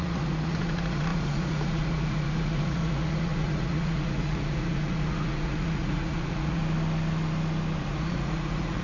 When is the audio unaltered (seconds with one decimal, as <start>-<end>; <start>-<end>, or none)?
6.6-7.8

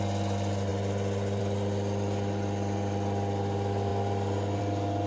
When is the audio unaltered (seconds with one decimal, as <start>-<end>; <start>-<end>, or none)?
0.0-5.1

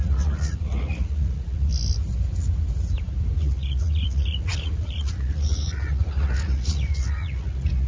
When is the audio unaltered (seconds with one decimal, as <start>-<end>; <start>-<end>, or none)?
1.7-3.4

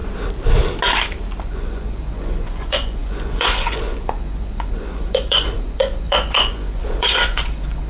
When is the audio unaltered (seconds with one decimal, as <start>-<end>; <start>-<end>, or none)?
0.0-1.4